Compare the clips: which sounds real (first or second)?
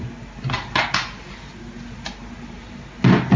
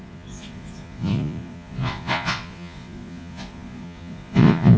first